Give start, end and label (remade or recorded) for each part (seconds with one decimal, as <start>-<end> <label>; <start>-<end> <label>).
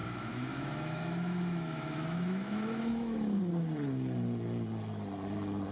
0.0-3.4 remade; 3.4-5.7 recorded